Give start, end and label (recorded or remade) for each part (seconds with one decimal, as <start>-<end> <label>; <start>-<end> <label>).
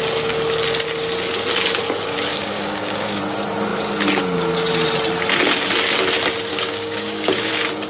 0.0-2.3 recorded; 2.3-3.2 remade; 3.2-6.5 recorded; 6.5-7.5 remade; 7.5-7.9 recorded